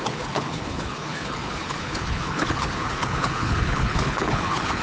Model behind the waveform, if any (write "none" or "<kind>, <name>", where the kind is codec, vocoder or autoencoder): codec, HILCodec